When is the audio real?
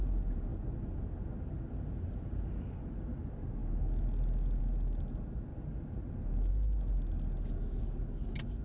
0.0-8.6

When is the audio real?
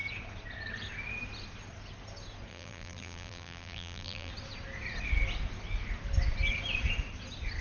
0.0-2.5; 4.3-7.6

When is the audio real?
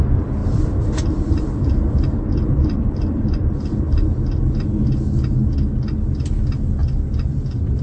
0.0-0.4; 4.5-6.8